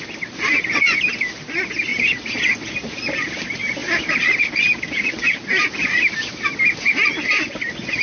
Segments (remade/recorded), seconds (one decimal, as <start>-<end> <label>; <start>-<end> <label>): 0.0-8.0 recorded